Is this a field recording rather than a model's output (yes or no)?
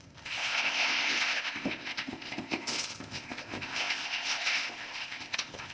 no